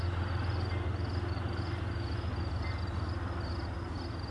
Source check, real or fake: real